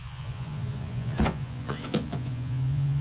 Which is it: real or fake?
fake